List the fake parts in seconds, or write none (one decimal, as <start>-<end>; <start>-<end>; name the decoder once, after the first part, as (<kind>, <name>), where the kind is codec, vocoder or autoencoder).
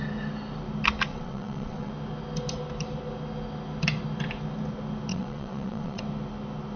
1.1-1.9 (vocoder, WaveNeXt); 5.1-6.0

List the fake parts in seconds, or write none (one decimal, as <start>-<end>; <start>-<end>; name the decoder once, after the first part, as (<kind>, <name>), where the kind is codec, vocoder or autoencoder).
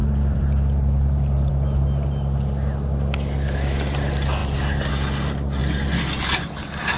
0.0-1.5 (vocoder, BigVGAN v2)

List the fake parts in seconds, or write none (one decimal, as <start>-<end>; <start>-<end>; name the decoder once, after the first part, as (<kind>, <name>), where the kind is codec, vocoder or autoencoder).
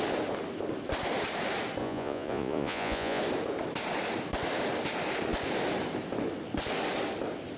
1.8-3.2 (vocoder, Vocos)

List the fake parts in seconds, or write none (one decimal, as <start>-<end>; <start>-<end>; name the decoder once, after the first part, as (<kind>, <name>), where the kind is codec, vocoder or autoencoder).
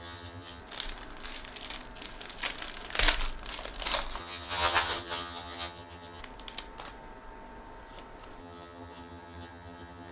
0.0-0.6 (vocoder, HiFi-GAN); 4.2-6.2; 8.4-10.1